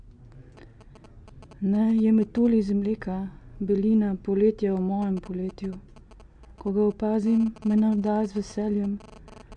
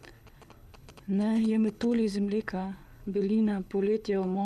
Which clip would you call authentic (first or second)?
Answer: first